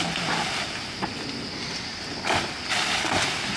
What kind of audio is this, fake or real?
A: real